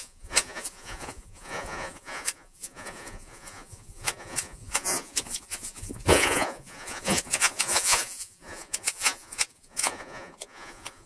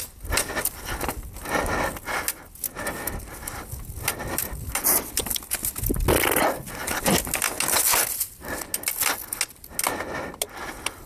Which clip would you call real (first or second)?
second